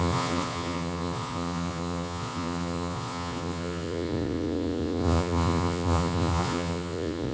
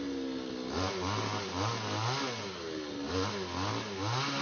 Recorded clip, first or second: second